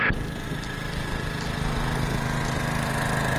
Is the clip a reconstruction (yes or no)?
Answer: no